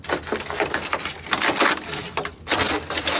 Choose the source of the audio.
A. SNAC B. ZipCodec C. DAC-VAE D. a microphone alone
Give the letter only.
D